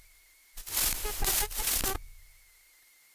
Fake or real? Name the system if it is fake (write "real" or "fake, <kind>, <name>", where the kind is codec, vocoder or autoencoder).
real